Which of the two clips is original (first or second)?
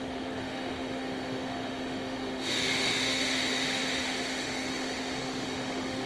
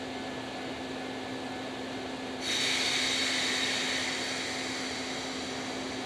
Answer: second